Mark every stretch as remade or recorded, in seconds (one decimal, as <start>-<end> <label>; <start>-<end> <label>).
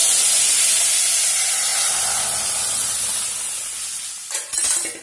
0.0-5.0 recorded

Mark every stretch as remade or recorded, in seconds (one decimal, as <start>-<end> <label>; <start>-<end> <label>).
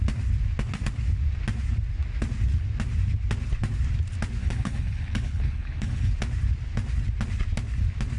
0.0-4.4 recorded; 4.4-6.1 remade; 6.1-8.2 recorded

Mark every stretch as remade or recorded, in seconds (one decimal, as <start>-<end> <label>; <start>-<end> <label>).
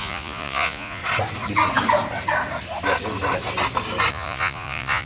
0.0-1.0 remade; 1.0-4.1 recorded; 4.1-5.1 remade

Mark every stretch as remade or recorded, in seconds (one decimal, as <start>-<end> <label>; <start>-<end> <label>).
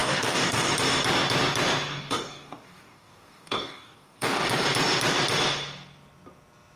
0.0-0.7 remade; 0.7-1.9 recorded; 1.9-4.5 remade; 4.5-6.8 recorded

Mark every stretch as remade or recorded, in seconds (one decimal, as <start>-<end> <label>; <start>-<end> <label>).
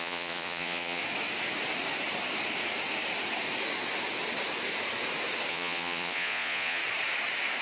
0.0-1.0 remade; 1.0-5.5 recorded; 5.5-6.8 remade; 6.8-7.6 recorded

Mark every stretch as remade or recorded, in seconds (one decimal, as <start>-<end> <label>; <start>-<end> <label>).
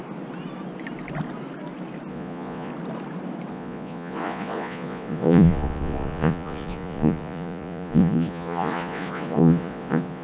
0.0-2.1 recorded; 2.1-2.7 remade; 2.7-3.5 recorded; 3.5-10.2 remade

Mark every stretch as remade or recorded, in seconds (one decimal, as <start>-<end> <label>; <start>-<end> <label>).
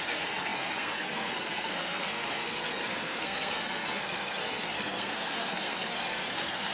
0.0-6.7 remade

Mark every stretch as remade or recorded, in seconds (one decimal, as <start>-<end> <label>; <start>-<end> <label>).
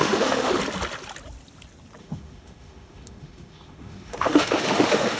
0.0-0.6 remade; 0.6-2.0 recorded; 2.0-5.2 remade